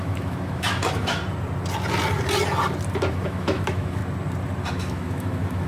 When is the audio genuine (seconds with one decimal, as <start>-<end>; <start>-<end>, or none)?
1.2-3.1; 4.0-4.7